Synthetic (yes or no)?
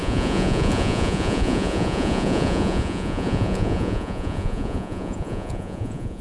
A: yes